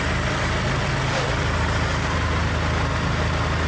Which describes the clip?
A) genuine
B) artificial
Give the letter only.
A